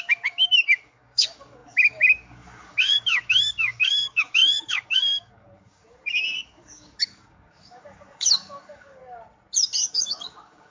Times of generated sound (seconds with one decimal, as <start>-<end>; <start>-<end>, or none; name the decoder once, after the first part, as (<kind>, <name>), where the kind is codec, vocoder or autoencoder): 0.0-9.0 (codec, DAC); 9.8-10.7